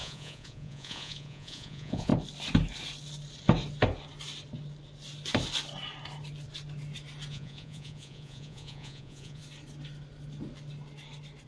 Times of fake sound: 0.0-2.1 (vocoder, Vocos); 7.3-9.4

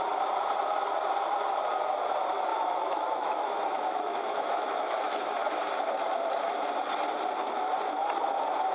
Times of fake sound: 2.5-5.5 (autoencoder, DAC-VAE)

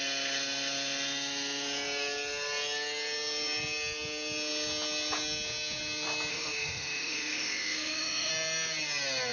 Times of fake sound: 6.3-8.3 (autoencoder, DAC-VAE)